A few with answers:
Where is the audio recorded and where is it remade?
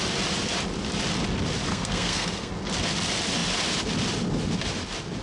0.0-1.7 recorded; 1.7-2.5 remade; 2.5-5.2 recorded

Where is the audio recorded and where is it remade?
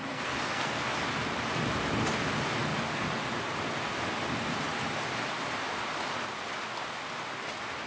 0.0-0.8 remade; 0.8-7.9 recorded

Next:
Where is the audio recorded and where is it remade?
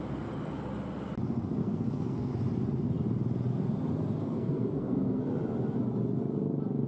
0.0-1.6 recorded; 1.6-2.3 remade; 2.3-4.2 recorded; 4.2-5.2 remade; 5.2-6.9 recorded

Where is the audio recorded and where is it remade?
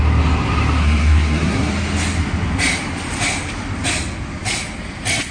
0.0-0.8 recorded; 0.8-1.7 remade; 1.7-5.3 recorded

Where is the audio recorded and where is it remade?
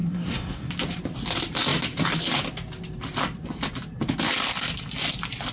0.0-0.7 remade; 0.7-5.5 recorded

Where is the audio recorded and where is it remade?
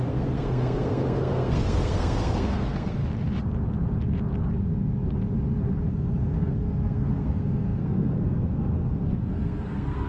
0.0-3.0 remade; 3.0-5.9 recorded; 5.9-10.1 remade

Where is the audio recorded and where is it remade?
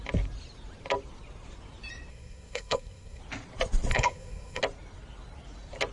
0.0-2.1 recorded; 2.1-3.2 remade; 3.2-3.9 recorded; 3.9-4.6 remade; 4.6-5.9 recorded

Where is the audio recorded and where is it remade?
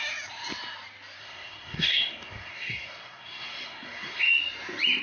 0.0-1.2 recorded; 1.2-4.2 remade; 4.2-5.0 recorded